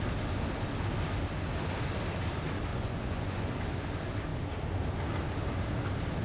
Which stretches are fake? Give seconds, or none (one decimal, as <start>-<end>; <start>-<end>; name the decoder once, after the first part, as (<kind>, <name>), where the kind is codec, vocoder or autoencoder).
2.7-3.5 (vocoder, Vocos)